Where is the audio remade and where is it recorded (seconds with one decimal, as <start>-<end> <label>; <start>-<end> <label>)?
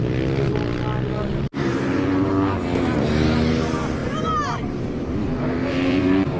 0.0-1.3 recorded; 1.3-2.3 remade; 2.3-4.0 recorded; 4.0-6.4 remade